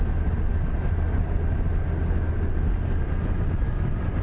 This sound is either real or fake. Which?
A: real